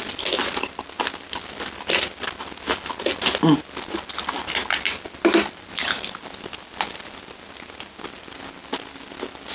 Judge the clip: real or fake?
real